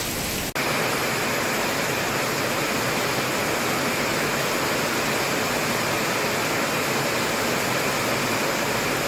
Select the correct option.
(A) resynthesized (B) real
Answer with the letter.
B